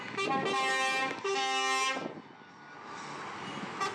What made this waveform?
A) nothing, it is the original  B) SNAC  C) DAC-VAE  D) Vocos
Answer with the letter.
A